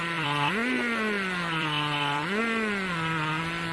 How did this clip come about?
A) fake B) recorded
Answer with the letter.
A